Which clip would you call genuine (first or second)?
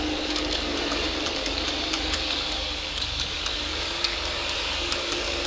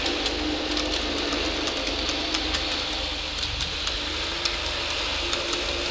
second